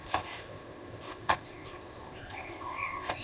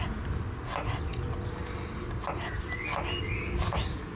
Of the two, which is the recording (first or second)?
second